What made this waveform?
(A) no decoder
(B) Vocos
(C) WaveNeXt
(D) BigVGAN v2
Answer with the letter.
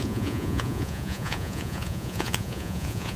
B